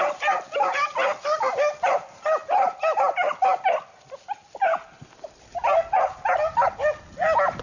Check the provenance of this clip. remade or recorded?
recorded